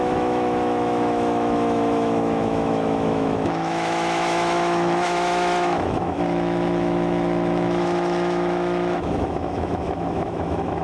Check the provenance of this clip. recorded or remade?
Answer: remade